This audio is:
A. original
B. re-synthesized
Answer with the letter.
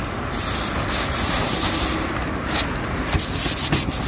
A